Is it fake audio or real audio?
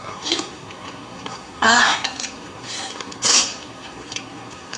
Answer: fake